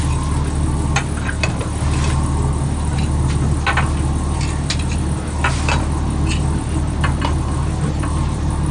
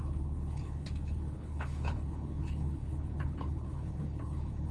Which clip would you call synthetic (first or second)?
second